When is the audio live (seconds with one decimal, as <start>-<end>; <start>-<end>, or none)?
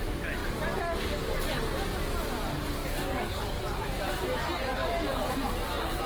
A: 0.0-2.8; 3.6-4.7; 5.3-6.1